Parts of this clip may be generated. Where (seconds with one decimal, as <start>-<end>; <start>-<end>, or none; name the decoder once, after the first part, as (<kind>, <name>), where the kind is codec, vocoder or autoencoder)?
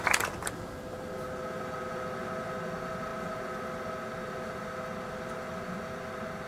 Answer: none